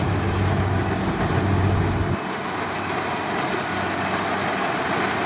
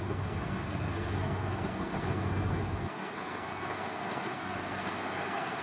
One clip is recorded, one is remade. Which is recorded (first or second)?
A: first